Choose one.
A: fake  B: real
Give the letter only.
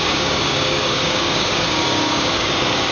A